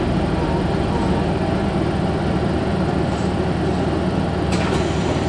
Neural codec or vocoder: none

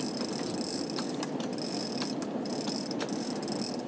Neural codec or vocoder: vocoder, BigVGAN v2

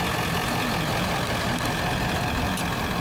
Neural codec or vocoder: none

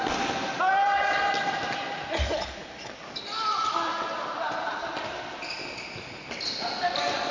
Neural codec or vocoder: none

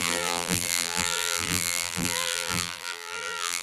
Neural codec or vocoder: vocoder, BigVGAN v2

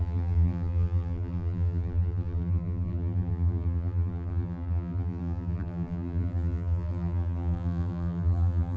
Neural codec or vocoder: vocoder, BigVGAN v2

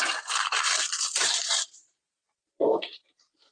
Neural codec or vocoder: vocoder, BigVGAN v2